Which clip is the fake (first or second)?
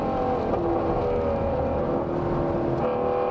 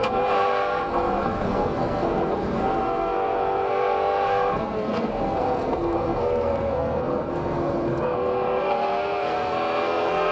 second